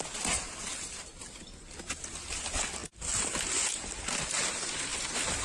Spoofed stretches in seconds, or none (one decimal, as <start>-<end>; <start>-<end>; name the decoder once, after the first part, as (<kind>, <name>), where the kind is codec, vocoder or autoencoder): none